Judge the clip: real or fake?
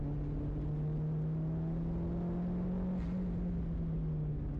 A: real